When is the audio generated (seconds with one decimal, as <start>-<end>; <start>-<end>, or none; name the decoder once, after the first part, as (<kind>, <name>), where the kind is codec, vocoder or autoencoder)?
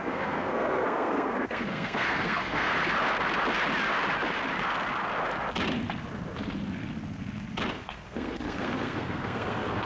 0.0-2.7 (codec, SNAC); 7.7-9.9